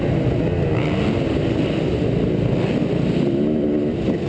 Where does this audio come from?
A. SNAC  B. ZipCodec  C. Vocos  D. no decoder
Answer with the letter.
D